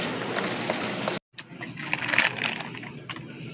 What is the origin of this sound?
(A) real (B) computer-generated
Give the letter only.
A